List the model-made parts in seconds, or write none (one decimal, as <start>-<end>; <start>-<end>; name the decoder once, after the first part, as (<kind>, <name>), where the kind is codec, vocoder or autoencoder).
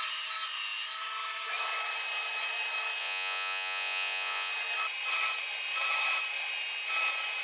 3.0-4.5 (vocoder, Vocos)